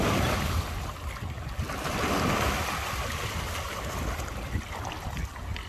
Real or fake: real